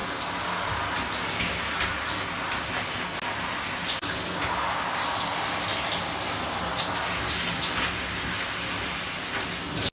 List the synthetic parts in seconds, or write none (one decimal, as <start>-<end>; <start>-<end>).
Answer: none